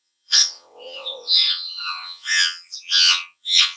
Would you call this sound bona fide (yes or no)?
no